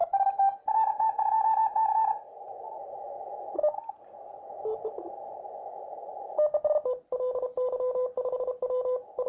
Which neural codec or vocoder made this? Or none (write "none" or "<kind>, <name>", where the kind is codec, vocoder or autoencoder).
none